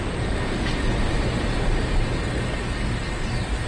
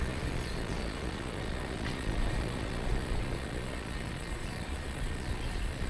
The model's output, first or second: second